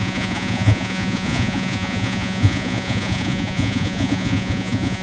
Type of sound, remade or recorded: remade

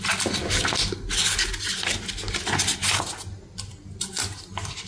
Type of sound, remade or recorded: recorded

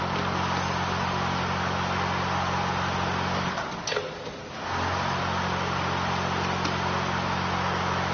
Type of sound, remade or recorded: recorded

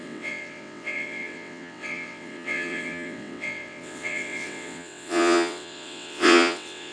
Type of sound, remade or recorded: remade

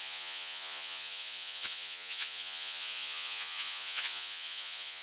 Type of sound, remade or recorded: remade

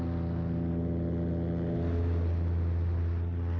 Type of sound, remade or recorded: recorded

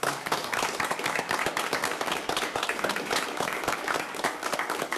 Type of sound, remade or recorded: remade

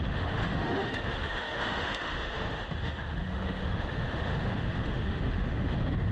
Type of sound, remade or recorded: remade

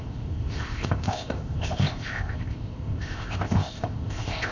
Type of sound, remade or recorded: remade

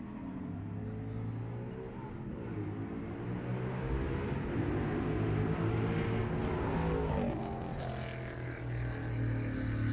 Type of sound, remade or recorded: recorded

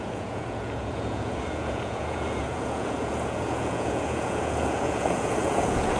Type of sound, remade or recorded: remade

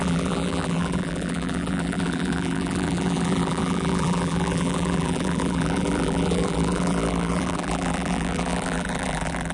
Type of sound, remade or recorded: remade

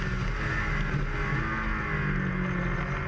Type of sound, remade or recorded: recorded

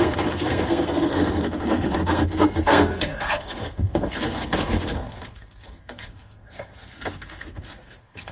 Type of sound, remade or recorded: remade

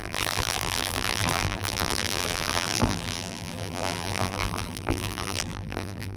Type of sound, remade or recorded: remade